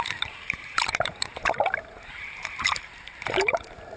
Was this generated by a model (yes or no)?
yes